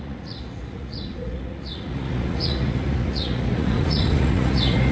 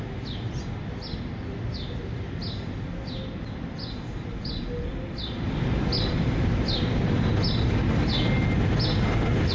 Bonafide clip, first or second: second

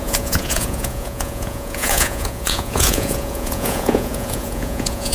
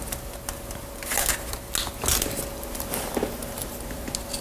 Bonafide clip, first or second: second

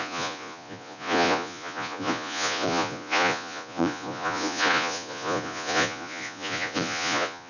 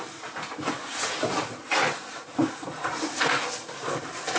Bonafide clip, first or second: second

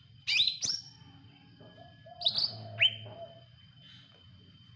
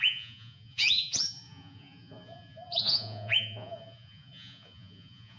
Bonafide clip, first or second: first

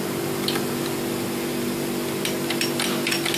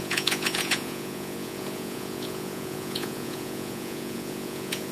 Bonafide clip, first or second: first